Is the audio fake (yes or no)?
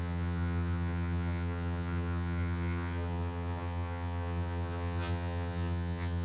yes